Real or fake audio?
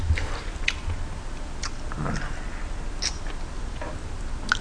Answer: real